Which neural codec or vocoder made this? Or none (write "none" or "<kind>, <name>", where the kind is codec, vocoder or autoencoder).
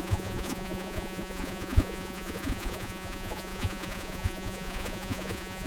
vocoder, Vocos